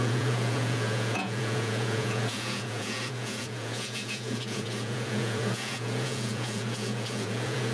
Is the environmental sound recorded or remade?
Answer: remade